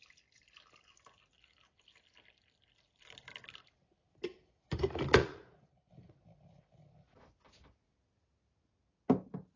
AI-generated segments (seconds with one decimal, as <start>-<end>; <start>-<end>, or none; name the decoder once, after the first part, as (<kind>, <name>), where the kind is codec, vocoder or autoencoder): 5.2-5.9 (vocoder, Vocos)